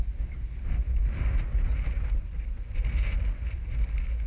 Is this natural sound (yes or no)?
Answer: yes